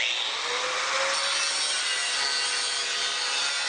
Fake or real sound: real